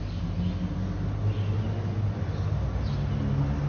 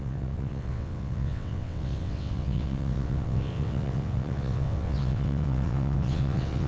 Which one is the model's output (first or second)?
second